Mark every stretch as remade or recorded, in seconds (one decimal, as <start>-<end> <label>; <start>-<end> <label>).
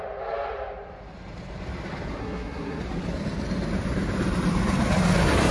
0.0-2.2 recorded; 2.2-2.8 remade; 2.8-5.5 recorded